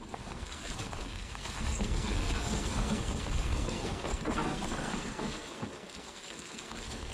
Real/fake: fake